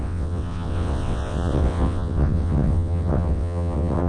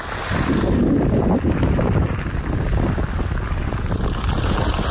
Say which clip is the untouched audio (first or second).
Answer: second